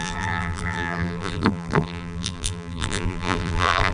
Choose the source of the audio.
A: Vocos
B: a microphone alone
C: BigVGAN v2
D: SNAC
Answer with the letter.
C